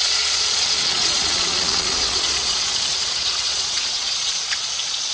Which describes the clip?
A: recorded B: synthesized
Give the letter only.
B